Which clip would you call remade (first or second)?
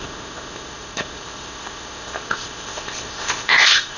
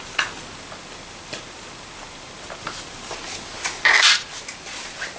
first